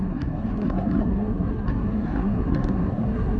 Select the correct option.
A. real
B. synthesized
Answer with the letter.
B